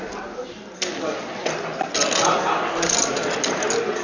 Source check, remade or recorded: recorded